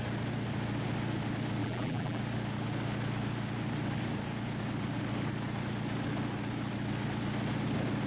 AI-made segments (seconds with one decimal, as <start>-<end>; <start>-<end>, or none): 1.6-2.2